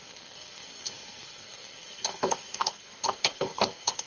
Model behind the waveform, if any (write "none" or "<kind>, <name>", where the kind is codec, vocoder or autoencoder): codec, SNAC